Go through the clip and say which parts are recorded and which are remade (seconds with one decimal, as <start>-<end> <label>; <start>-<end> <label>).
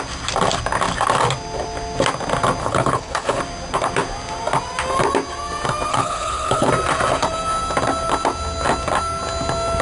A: 0.0-2.6 recorded; 2.6-3.4 remade; 3.4-5.9 recorded; 5.9-6.7 remade; 6.7-9.8 recorded